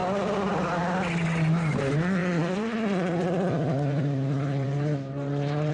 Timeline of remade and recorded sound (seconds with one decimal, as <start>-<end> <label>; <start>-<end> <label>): 0.0-1.2 recorded; 1.2-1.8 remade; 1.8-2.2 recorded; 2.2-5.7 remade

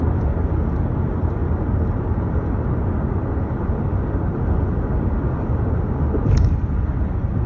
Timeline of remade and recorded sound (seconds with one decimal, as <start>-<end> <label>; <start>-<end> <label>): 0.0-7.5 recorded